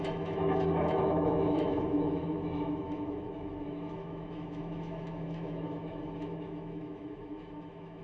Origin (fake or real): fake